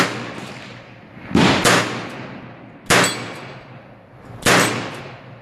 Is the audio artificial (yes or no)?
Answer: no